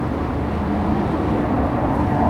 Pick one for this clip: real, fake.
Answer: real